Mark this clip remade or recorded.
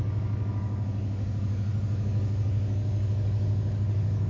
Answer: remade